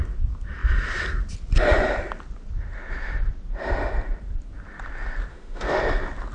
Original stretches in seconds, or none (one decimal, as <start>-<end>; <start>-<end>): 0.0-5.3; 5.8-6.3